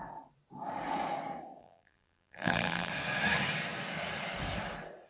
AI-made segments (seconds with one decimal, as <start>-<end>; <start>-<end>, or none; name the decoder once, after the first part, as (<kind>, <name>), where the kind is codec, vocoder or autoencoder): 1.6-2.9 (vocoder, BigVGAN v2)